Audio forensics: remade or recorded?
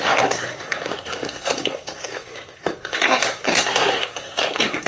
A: remade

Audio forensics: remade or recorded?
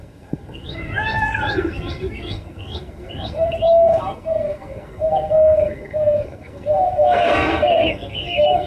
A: remade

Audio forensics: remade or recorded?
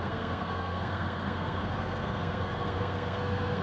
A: remade